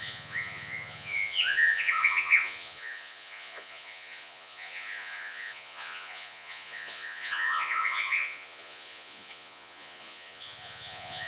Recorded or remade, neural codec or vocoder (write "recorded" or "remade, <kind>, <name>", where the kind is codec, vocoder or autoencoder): remade, vocoder, Vocos